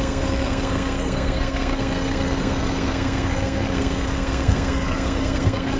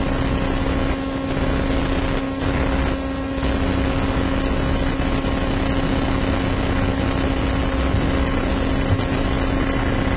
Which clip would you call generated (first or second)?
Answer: first